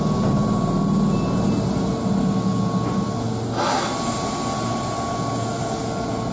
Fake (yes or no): no